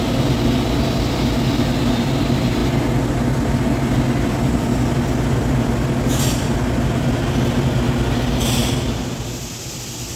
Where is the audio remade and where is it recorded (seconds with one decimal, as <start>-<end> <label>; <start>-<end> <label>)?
0.0-10.2 recorded

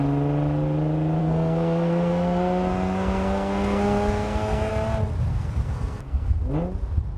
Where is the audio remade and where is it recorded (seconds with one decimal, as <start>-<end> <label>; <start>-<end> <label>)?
0.0-1.2 recorded; 1.2-4.7 remade; 4.7-5.3 recorded; 5.3-6.4 remade; 6.4-7.2 recorded

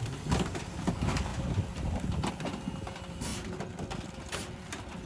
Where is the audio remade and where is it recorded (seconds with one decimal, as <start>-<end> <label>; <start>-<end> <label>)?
0.0-5.1 recorded

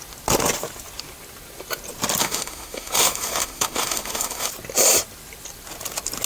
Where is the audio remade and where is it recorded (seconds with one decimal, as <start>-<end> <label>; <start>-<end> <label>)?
0.0-2.2 recorded; 2.2-4.5 remade; 4.5-6.3 recorded

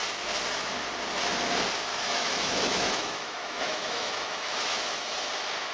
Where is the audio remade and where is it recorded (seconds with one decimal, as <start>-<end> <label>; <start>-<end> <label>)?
0.0-1.9 recorded; 1.9-5.3 remade; 5.3-5.7 recorded

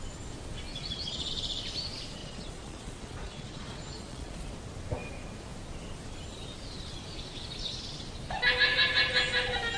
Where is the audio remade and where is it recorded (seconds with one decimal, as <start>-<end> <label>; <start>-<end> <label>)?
0.0-0.7 recorded; 0.7-1.3 remade; 1.3-2.2 recorded; 2.2-4.5 remade; 4.5-9.8 recorded

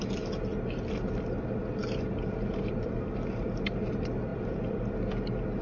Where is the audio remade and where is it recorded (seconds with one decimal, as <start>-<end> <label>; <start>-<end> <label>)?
0.0-1.8 recorded; 1.8-3.9 remade; 3.9-5.6 recorded

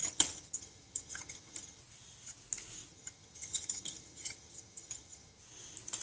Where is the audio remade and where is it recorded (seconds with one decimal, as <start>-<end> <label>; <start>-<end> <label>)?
0.0-1.8 remade; 1.8-2.9 recorded; 2.9-5.4 remade; 5.4-6.0 recorded